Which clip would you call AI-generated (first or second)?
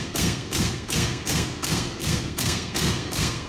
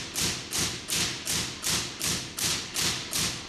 first